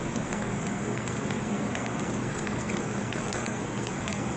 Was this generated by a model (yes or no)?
yes